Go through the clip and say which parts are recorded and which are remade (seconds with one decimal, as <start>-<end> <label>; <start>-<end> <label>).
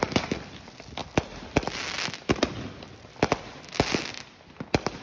0.0-5.0 recorded